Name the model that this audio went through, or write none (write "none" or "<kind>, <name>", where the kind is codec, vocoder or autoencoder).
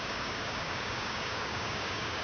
codec, DAC